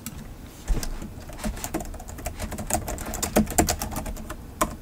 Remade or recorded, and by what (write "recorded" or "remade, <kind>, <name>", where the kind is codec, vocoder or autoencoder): recorded